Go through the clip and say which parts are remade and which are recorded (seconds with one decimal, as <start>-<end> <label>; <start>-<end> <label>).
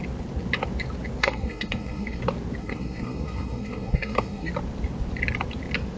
0.0-1.2 recorded; 1.2-2.2 remade; 2.2-2.6 recorded; 2.6-4.5 remade; 4.5-6.0 recorded